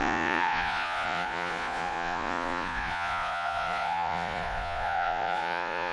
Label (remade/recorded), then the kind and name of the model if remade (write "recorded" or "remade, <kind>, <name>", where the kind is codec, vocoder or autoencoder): remade, vocoder, Vocos